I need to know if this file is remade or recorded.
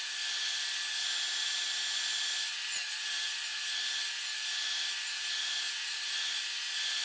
recorded